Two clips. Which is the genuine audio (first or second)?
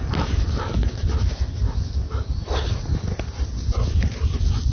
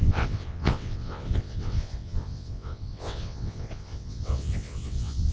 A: first